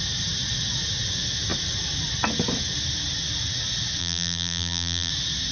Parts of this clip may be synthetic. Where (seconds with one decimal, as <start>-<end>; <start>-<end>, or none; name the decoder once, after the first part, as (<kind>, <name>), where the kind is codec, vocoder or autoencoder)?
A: 4.0-5.1 (vocoder, BigVGAN v2)